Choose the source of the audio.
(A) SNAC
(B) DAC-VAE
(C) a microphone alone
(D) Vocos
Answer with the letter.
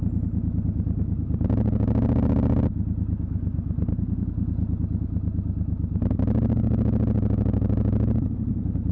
C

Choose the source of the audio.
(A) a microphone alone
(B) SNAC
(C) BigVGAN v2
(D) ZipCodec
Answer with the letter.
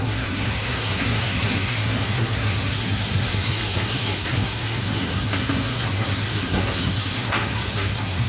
B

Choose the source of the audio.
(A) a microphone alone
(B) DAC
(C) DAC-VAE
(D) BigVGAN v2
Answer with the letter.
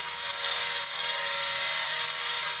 B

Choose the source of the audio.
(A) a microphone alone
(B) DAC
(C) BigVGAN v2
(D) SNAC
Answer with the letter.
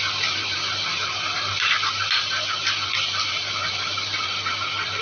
C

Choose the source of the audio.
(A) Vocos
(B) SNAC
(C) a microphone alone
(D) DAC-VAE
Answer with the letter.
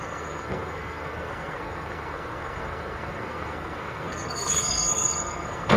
B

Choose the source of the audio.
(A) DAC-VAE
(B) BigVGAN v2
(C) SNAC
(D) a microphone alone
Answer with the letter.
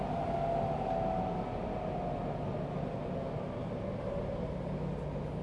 D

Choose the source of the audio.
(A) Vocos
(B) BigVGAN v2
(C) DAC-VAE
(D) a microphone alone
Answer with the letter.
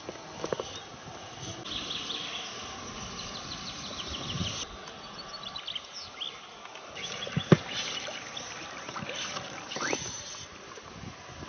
D